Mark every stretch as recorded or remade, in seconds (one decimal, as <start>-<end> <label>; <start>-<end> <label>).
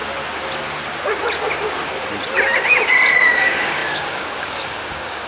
0.0-3.1 recorded; 3.1-5.3 remade